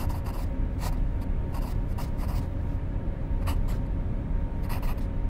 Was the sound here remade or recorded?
remade